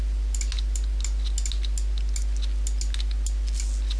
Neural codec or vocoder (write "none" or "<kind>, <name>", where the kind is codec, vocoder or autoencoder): none